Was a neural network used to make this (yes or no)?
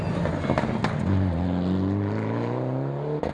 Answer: no